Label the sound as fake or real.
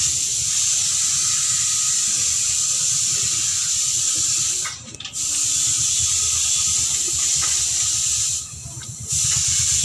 real